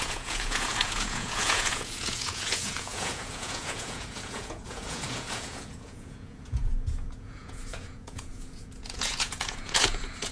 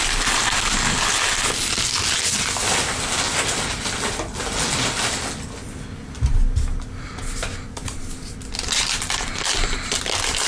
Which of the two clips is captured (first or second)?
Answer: second